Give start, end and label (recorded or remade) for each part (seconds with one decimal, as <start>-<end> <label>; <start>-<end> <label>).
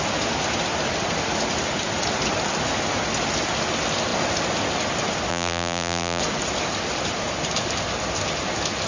0.0-5.3 recorded; 5.3-6.2 remade; 6.2-8.9 recorded